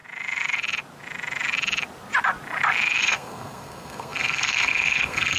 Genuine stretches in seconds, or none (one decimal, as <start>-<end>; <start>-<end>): 0.0-3.0